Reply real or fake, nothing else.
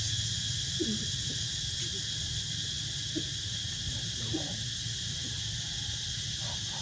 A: real